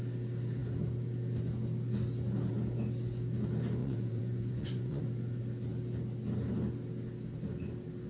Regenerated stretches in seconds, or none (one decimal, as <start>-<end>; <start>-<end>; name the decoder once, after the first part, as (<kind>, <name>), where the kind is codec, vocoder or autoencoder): 3.8-5.0 (vocoder, Vocos)